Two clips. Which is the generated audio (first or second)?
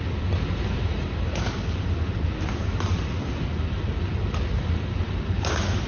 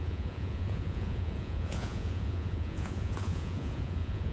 second